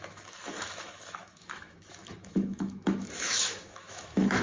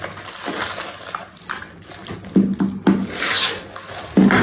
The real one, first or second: second